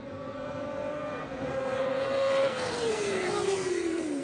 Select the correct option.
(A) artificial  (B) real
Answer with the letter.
A